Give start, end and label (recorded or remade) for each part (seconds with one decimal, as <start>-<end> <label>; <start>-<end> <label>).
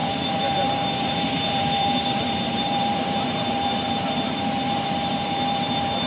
0.0-6.1 remade